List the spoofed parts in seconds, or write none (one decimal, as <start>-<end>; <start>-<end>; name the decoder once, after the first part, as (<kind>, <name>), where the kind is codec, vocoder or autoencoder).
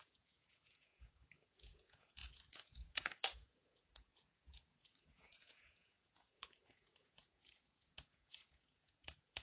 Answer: 0.0-9.4 (vocoder, Vocos)